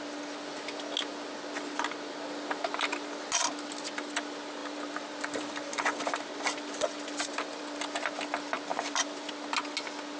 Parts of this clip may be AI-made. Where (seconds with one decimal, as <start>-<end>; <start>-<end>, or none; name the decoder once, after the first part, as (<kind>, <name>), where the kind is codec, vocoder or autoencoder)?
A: 4.6-7.6 (vocoder, BigVGAN v2); 8.7-9.3